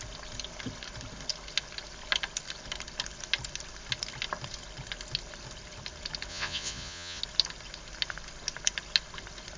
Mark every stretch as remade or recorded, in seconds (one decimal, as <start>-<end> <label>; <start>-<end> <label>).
0.0-6.3 recorded; 6.3-7.2 remade; 7.2-9.6 recorded